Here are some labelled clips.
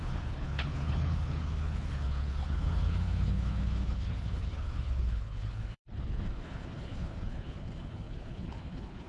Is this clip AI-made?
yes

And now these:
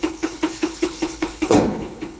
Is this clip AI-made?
yes